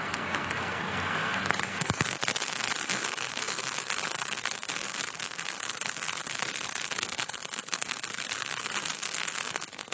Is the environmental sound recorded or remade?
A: remade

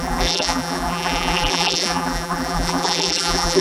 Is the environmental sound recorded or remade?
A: remade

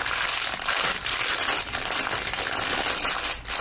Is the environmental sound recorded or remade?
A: recorded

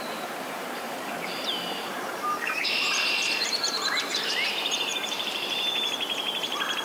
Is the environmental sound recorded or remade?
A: remade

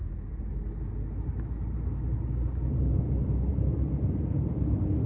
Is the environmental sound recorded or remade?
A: recorded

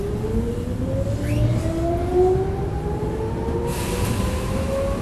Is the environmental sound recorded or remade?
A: recorded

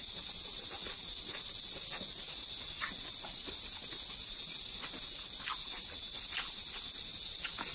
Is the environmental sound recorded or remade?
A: recorded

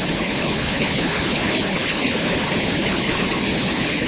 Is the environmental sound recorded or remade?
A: remade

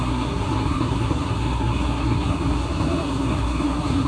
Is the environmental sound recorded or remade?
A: remade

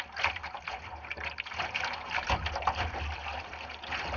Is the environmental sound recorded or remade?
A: recorded